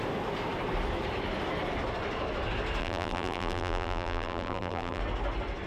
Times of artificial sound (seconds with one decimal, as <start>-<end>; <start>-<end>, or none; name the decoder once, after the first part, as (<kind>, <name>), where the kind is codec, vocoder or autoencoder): 2.8-5.0 (vocoder, BigVGAN v2)